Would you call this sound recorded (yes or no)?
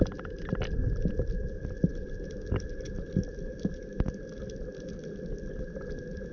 no